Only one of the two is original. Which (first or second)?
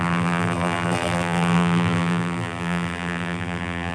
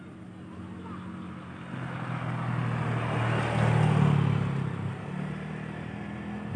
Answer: second